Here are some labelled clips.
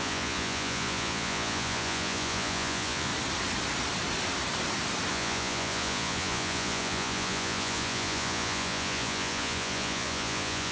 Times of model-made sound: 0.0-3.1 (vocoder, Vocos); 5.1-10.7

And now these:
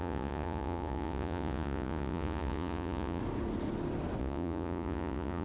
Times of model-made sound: 0.0-3.2 (vocoder, Vocos); 4.2-5.4

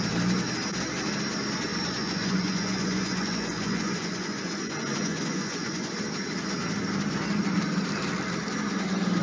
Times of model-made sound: 1.7-5.9 (vocoder, Vocos)

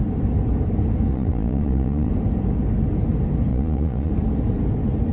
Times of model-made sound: 1.1-2.1 (vocoder, Vocos); 3.5-4.1

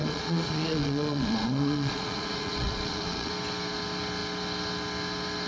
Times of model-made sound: 0.0-3.3 (vocoder, Vocos)